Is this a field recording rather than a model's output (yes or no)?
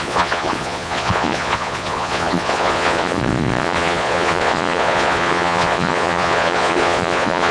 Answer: no